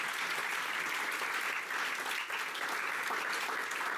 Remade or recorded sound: recorded